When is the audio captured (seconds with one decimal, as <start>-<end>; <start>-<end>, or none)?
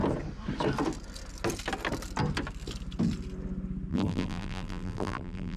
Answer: 0.0-3.9